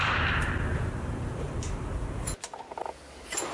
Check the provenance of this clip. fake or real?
real